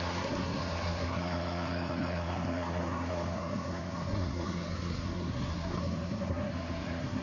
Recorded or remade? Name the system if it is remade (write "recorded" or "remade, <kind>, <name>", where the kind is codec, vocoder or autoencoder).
remade, codec, SNAC